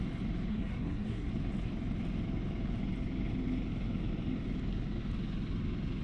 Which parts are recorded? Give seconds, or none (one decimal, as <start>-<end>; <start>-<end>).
0.0-0.5; 1.3-6.0